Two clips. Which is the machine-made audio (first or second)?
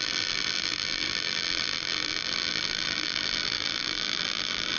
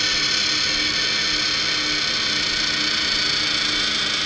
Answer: first